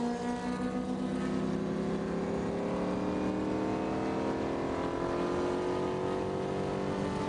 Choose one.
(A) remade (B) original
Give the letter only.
B